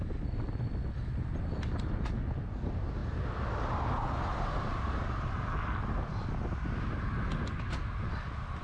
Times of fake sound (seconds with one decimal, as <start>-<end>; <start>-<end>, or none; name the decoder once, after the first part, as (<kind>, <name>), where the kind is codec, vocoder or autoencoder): none